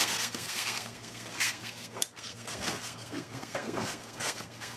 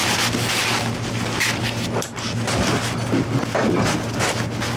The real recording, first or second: second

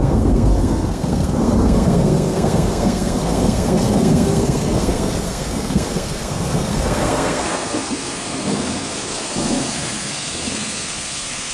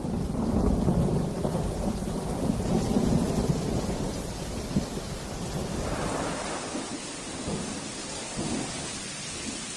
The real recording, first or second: second